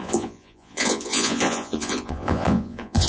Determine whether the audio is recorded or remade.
remade